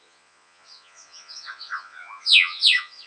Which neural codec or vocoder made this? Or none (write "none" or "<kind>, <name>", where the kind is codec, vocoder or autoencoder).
vocoder, Vocos